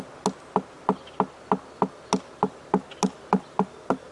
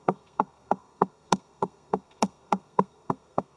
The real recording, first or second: first